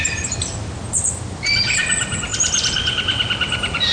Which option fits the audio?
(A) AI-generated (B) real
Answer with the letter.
B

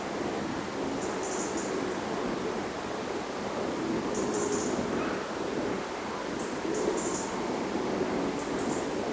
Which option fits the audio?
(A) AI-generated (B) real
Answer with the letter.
B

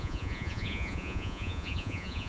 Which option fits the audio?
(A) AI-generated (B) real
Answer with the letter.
A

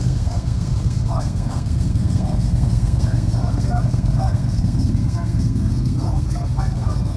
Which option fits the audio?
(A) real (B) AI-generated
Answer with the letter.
B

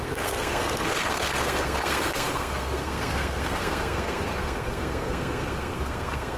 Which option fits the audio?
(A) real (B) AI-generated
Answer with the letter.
B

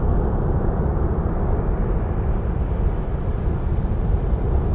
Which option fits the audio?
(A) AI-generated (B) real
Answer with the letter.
B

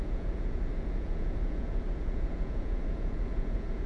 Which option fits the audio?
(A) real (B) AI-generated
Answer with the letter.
B